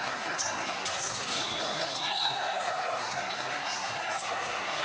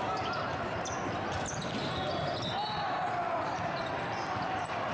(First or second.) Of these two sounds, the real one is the second